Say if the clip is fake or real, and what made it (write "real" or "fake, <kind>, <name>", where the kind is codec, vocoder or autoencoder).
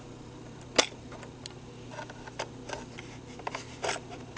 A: real